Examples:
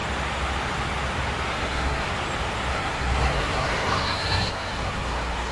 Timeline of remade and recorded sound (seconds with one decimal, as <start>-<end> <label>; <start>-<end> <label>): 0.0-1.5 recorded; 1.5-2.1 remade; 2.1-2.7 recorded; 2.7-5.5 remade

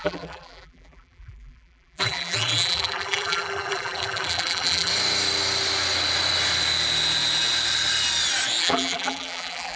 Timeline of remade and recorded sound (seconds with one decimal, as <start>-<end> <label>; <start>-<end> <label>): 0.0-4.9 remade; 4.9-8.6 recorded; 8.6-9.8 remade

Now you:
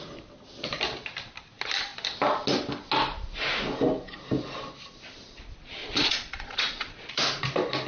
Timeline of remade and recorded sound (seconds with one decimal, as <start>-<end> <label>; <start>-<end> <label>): 0.0-5.8 recorded; 5.8-7.2 remade; 7.2-7.9 recorded

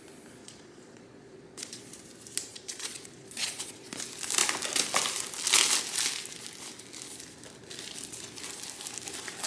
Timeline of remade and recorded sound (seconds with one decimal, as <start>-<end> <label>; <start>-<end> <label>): 0.0-0.4 recorded; 0.4-1.8 remade; 1.8-2.5 recorded; 2.5-4.0 remade; 4.0-9.5 recorded